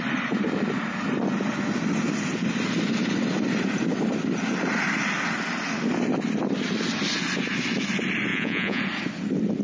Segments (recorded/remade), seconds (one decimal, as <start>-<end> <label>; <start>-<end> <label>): 0.0-8.3 recorded; 8.3-8.8 remade; 8.8-9.6 recorded